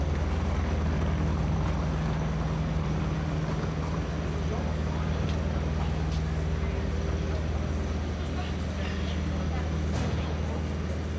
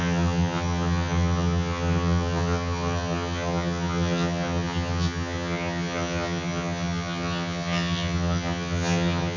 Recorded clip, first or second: first